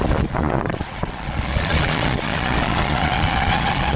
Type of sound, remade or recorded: remade